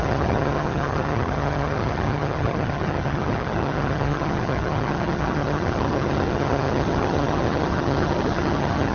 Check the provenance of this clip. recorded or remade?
remade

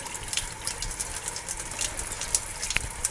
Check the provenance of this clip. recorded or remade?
recorded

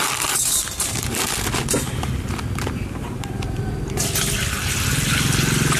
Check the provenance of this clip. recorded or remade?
recorded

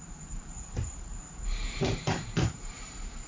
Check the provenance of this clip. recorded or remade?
remade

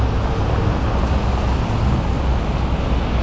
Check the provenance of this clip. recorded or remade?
recorded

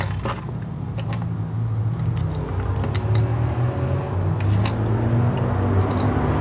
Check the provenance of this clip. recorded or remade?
recorded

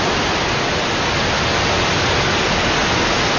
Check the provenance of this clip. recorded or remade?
recorded